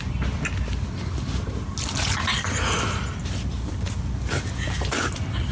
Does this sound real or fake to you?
real